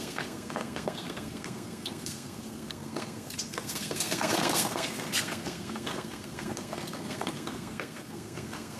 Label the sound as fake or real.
fake